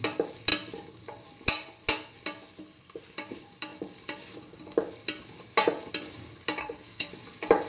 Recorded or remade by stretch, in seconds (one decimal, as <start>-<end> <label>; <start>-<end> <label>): 0.0-6.6 recorded; 6.6-7.1 remade; 7.1-7.7 recorded

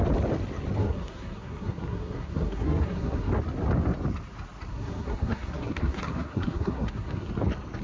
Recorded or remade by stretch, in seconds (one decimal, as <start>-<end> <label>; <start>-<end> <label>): 0.0-0.8 recorded; 0.8-3.3 remade; 3.3-4.7 recorded; 4.7-7.3 remade; 7.3-7.8 recorded

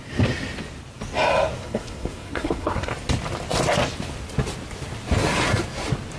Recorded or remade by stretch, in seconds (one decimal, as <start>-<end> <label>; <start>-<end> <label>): 0.0-1.6 recorded; 1.6-2.9 remade; 2.9-6.2 recorded